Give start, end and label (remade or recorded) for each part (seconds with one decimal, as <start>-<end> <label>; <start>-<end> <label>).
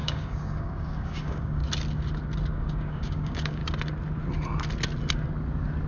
0.0-1.6 remade; 1.6-2.5 recorded; 2.5-3.6 remade; 3.6-5.9 recorded